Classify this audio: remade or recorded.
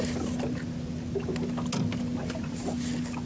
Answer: recorded